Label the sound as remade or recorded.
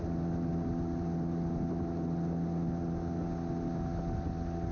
recorded